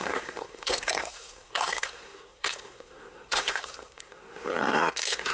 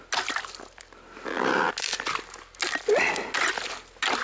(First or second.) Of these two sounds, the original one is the second